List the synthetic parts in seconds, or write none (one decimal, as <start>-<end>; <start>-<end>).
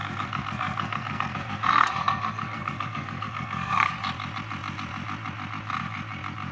0.0-3.9